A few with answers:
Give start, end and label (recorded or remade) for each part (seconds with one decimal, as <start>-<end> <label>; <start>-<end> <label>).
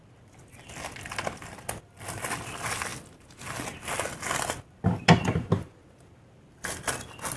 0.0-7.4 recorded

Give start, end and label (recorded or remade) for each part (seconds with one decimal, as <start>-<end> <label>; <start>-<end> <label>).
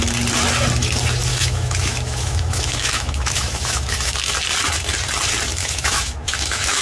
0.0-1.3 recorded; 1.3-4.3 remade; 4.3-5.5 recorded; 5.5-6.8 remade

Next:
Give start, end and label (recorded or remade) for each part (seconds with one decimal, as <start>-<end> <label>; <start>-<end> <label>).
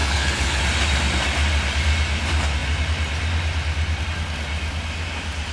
0.0-0.6 remade; 0.6-5.5 recorded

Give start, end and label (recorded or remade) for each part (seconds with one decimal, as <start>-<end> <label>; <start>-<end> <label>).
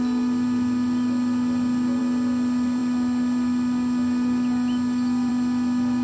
0.0-6.0 recorded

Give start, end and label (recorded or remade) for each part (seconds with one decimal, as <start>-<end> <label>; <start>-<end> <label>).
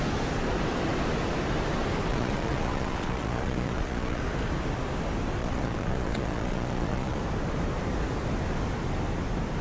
0.0-2.1 recorded; 2.1-4.2 remade; 4.2-5.4 recorded; 5.4-7.2 remade; 7.2-9.6 recorded